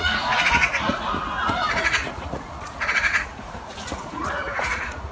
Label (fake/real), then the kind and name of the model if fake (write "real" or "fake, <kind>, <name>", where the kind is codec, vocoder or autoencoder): fake, vocoder, Vocos